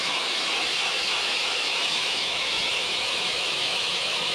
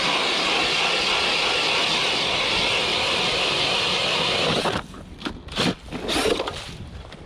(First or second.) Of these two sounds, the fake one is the first